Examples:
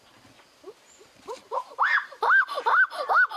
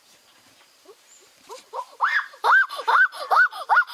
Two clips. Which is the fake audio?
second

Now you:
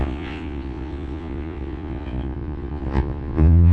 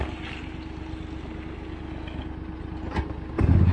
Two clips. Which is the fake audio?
first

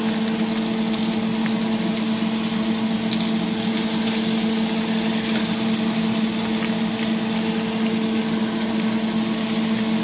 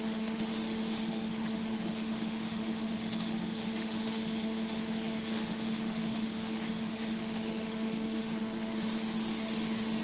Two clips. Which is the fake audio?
second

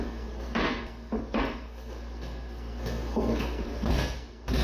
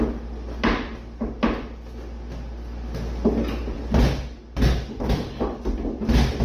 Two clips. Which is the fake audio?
first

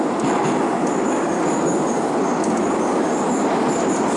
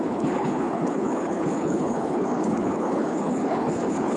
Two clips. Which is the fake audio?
second